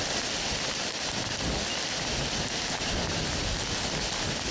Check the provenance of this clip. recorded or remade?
recorded